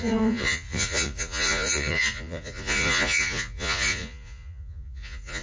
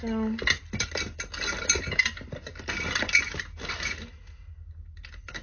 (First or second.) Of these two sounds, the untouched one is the second